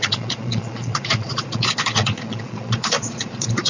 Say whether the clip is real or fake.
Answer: fake